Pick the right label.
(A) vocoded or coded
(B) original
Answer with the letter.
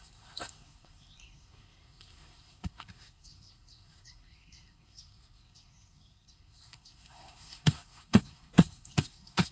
A